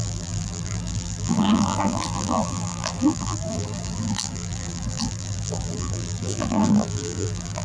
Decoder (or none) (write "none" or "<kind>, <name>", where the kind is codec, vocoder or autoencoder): vocoder, BigVGAN v2